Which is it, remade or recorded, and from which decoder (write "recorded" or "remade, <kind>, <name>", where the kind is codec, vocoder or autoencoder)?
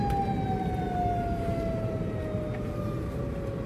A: recorded